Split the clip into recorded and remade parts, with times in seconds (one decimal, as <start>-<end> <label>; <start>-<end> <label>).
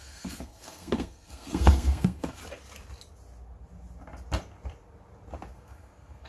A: 0.0-2.4 remade; 2.4-5.5 recorded; 5.5-6.3 remade